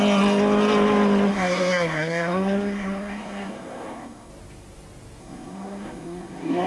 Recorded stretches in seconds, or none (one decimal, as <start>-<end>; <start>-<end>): 0.0-1.3; 4.3-5.2